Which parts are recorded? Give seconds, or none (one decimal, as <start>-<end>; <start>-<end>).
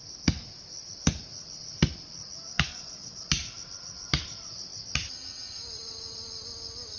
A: 0.0-2.5; 3.3-7.0